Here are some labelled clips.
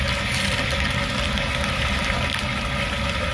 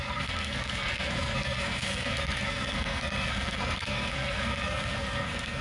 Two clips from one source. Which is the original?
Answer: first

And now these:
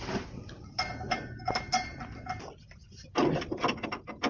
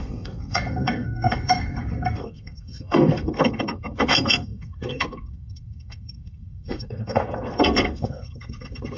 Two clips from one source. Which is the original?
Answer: first